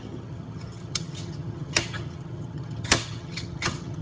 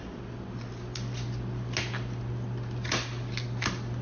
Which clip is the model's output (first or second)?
first